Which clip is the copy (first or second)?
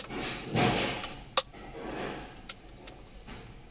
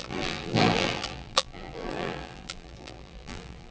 second